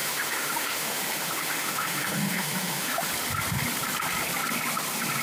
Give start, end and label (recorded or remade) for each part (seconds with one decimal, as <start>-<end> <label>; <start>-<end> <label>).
0.0-3.1 remade; 3.1-5.2 recorded